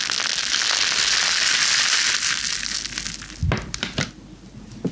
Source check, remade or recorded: recorded